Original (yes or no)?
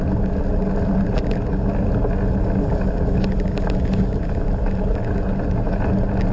yes